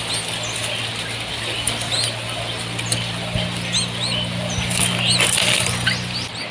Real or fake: real